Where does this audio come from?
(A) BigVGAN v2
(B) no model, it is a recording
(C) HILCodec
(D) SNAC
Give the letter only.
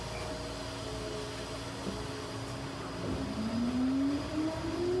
B